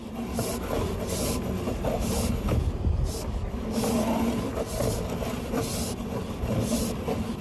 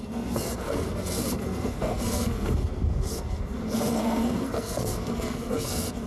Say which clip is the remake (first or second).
second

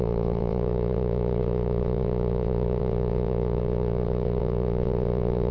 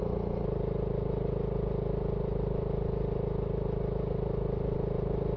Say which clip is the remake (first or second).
first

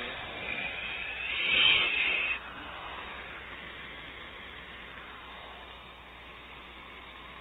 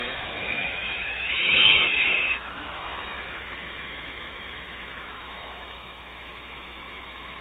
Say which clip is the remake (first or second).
second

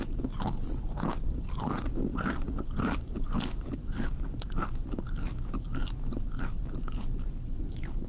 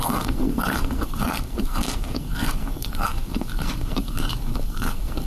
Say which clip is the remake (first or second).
second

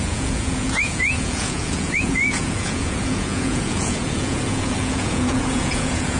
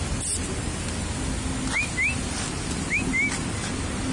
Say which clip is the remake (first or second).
first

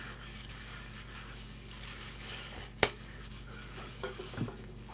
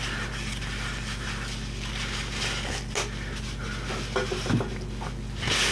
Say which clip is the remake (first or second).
first